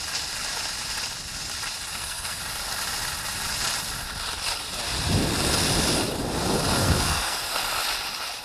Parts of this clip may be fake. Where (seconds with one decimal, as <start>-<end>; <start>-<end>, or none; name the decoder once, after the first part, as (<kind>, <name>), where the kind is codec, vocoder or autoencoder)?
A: 1.9-2.4 (codec, SNAC); 6.8-7.6